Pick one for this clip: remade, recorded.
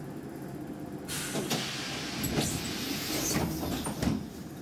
recorded